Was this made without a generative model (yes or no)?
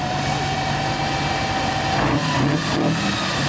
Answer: yes